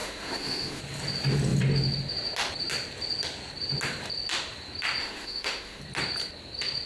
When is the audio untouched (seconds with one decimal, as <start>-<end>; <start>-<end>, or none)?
0.8-5.0; 5.8-6.9